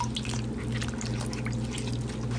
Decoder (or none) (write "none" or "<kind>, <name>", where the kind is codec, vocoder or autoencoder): none